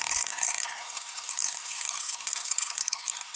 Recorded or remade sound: remade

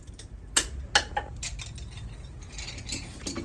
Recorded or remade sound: recorded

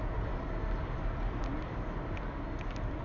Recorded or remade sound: recorded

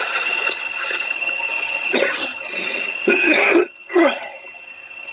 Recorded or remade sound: remade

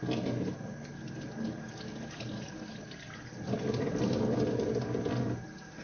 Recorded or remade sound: recorded